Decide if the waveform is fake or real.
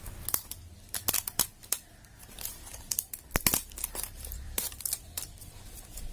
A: fake